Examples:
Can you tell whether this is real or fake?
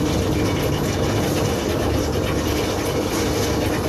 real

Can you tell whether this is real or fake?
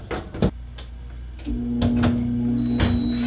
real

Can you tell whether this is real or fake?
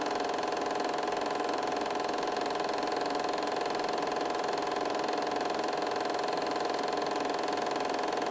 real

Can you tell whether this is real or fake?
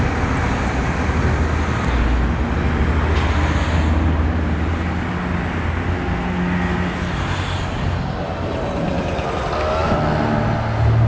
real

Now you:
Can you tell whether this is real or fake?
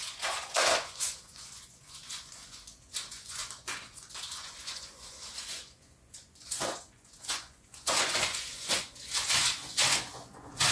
fake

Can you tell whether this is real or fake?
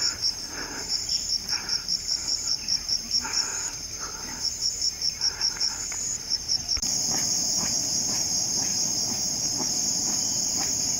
fake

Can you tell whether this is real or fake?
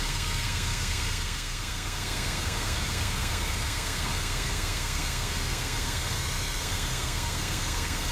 fake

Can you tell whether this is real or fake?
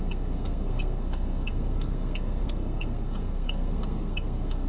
fake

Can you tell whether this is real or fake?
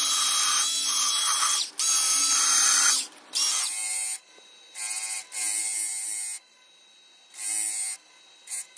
real